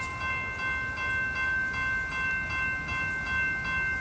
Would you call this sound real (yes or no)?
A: yes